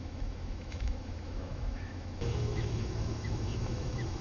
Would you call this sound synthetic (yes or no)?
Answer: yes